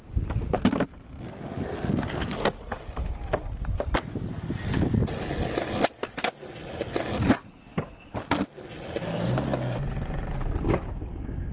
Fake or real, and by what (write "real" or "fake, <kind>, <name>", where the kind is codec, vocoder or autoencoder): real